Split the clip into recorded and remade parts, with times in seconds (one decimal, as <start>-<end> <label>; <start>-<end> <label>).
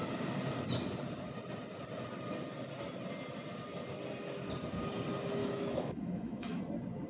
0.0-5.4 recorded; 5.4-6.6 remade; 6.6-7.1 recorded